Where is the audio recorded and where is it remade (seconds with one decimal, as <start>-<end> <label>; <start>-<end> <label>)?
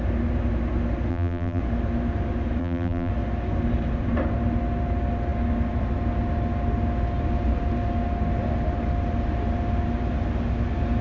0.0-1.1 recorded; 1.1-1.6 remade; 1.6-2.6 recorded; 2.6-3.1 remade; 3.1-11.0 recorded